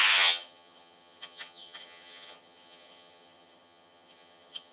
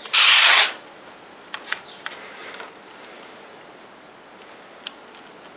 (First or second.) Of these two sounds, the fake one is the first